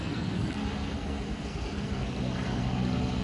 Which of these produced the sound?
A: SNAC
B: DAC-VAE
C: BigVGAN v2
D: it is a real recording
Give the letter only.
A